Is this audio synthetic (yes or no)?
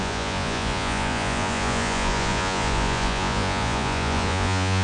yes